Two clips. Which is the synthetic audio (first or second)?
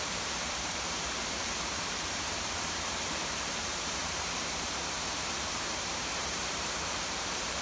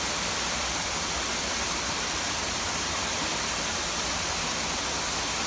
first